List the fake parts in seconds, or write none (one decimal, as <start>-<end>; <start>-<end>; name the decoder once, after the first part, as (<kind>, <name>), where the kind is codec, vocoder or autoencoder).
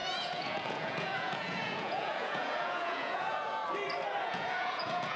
0.0-3.6 (vocoder, Vocos); 4.2-5.2